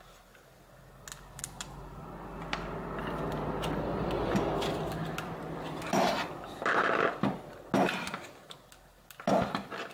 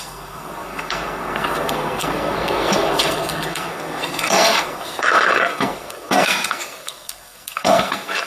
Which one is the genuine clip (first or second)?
first